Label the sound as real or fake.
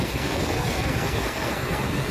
fake